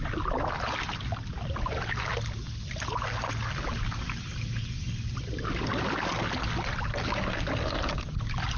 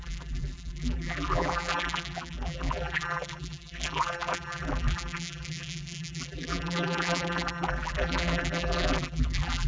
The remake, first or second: second